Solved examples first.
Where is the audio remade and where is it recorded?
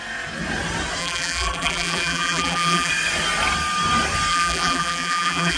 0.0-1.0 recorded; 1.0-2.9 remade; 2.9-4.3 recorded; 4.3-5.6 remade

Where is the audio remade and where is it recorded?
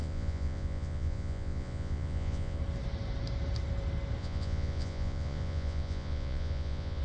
0.0-2.6 remade; 2.6-4.2 recorded; 4.2-7.0 remade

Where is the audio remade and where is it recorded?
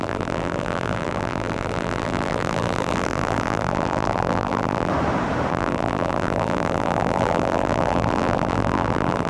0.0-4.9 remade; 4.9-5.5 recorded; 5.5-9.3 remade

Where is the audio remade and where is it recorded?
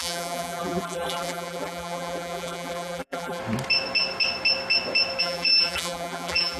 0.0-3.4 remade; 3.4-5.2 recorded; 5.2-6.6 remade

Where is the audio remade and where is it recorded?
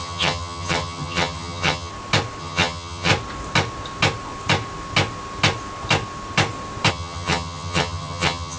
0.0-1.9 remade; 1.9-2.4 recorded; 2.4-3.1 remade; 3.1-6.9 recorded; 6.9-8.6 remade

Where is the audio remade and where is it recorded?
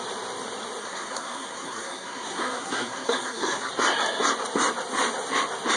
0.0-0.8 recorded; 0.8-3.7 remade; 3.7-5.8 recorded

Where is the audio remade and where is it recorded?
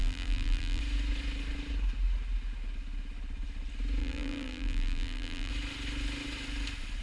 0.0-0.8 remade; 0.8-4.0 recorded; 4.0-5.5 remade; 5.5-7.0 recorded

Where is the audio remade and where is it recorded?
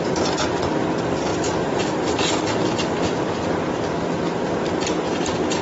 0.0-5.6 recorded